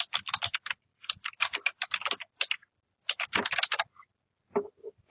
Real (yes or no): yes